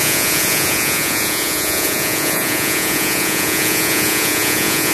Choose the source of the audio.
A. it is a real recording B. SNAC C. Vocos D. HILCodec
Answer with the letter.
C